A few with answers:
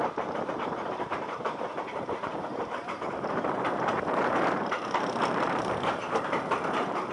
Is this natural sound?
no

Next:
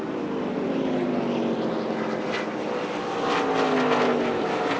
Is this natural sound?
no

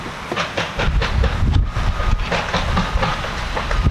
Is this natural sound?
yes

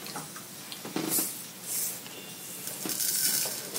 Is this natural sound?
yes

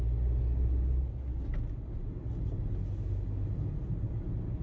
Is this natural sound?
yes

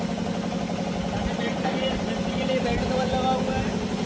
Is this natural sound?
yes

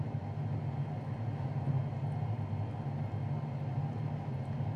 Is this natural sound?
yes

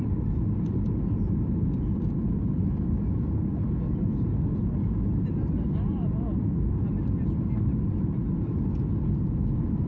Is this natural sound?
no